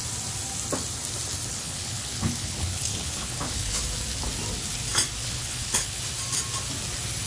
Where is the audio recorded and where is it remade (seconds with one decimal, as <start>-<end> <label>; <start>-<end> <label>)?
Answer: 0.0-1.5 recorded; 1.5-3.8 remade; 3.8-5.2 recorded; 5.2-6.0 remade; 6.0-7.3 recorded